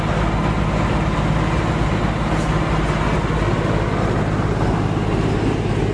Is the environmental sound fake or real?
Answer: real